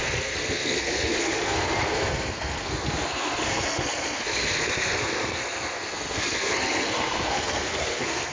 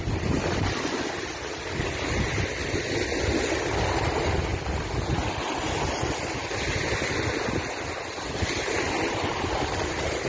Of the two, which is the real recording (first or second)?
second